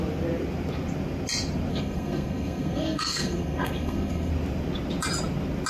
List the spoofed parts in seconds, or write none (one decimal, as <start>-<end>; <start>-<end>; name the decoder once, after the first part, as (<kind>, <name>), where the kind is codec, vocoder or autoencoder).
1.7-4.3 (codec, SNAC)